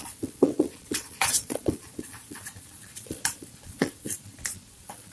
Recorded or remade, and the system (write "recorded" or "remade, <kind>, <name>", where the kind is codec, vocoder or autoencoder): remade, vocoder, Vocos